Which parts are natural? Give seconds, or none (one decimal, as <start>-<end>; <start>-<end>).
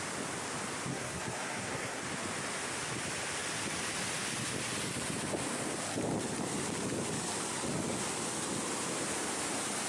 0.0-0.9; 2.0-9.9